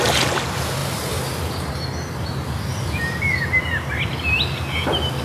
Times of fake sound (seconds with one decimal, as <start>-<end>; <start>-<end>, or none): 0.8-1.7; 2.7-3.5